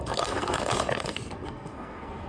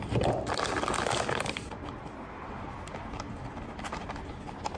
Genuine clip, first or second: second